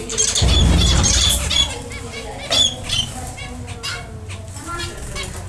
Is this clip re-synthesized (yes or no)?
no